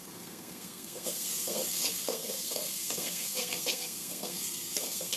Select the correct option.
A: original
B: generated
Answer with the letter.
B